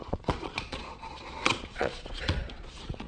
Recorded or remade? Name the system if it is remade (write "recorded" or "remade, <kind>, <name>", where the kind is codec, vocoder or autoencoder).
remade, vocoder, Vocos